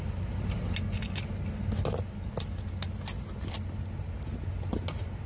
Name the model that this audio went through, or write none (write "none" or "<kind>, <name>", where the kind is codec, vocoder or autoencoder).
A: none